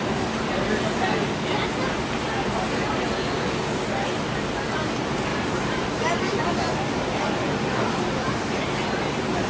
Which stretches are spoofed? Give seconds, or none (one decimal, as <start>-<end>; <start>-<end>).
5.3-7.2